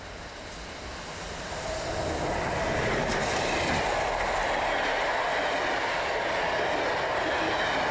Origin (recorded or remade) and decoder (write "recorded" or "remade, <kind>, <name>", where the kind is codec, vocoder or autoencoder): recorded